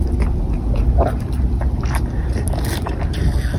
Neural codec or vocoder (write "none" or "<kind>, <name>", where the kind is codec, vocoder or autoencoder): none